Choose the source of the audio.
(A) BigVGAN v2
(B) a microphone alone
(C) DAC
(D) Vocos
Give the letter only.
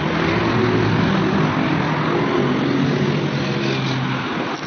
B